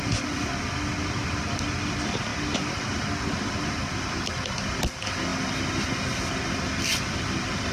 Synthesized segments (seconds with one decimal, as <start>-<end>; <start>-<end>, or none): none